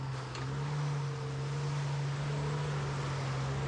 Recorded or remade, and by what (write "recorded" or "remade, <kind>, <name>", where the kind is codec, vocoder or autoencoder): recorded